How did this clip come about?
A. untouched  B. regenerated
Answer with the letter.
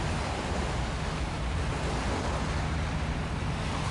A